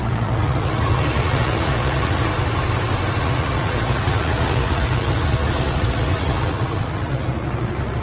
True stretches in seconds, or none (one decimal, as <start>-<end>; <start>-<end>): 2.3-3.2